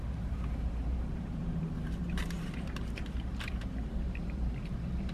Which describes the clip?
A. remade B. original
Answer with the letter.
A